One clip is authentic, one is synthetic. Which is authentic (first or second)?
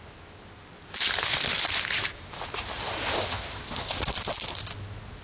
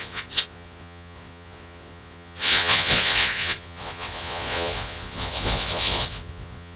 first